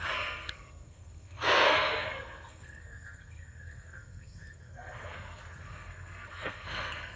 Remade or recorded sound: remade